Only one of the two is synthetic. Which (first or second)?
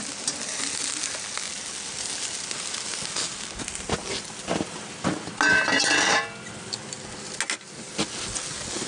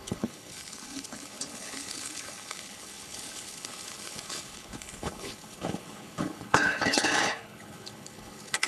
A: second